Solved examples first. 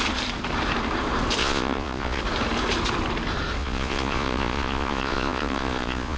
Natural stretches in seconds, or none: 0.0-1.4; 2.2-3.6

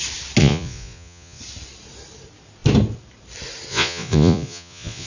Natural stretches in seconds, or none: 0.0-0.4; 1.4-3.7

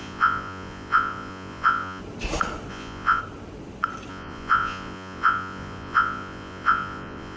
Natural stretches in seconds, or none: 2.0-2.7; 3.2-4.1

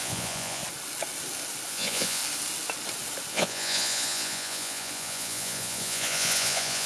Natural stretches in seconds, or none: 0.6-1.7; 2.2-3.3

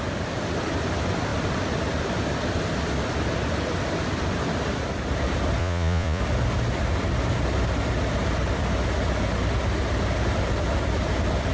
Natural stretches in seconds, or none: 0.0-5.6; 6.2-11.5

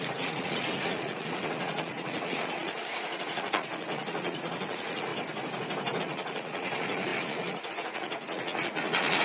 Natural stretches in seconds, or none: 5.1-6.0

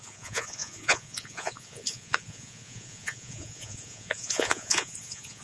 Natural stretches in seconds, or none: none

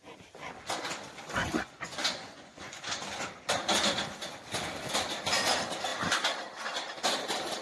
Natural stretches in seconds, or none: 0.0-1.4; 2.8-7.6